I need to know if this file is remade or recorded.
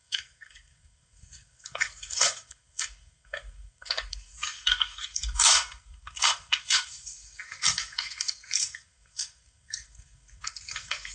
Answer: remade